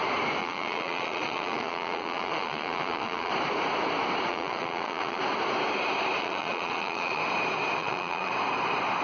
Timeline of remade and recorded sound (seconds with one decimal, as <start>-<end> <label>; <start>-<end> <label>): 0.0-0.4 recorded; 0.4-3.3 remade; 3.3-4.3 recorded; 4.3-5.2 remade; 5.2-6.2 recorded; 6.2-7.2 remade; 7.2-7.8 recorded; 7.8-8.3 remade; 8.3-9.0 recorded